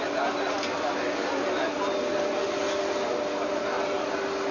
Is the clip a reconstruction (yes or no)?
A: no